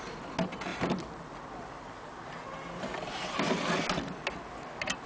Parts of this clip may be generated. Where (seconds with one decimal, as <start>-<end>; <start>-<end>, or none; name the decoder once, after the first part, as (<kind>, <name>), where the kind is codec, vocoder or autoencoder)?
none